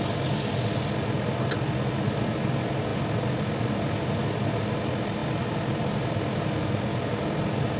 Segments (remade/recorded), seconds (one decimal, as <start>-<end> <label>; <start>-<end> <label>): 0.0-7.8 recorded